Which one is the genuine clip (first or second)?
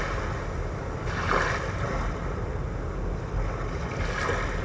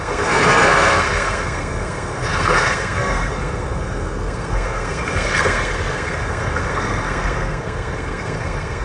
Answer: first